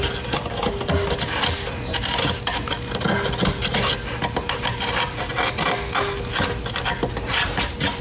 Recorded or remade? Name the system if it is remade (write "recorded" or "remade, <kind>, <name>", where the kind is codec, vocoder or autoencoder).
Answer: recorded